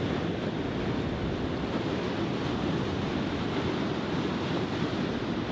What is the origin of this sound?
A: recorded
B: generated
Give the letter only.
A